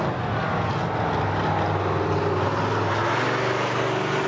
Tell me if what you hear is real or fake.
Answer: real